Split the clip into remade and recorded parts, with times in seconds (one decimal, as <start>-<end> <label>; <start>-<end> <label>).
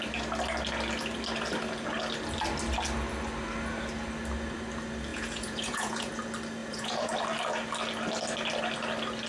0.0-5.1 recorded; 5.1-6.1 remade; 6.1-6.6 recorded; 6.6-7.1 remade; 7.1-9.3 recorded